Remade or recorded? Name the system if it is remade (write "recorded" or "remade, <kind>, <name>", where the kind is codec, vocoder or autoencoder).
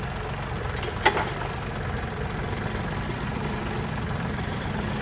remade, vocoder, BigVGAN v2